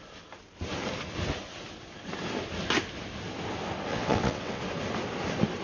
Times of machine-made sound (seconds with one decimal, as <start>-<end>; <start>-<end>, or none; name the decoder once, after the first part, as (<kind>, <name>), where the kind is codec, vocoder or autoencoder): 3.9-4.6 (vocoder, WaveNeXt)